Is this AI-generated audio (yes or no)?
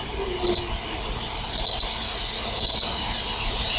no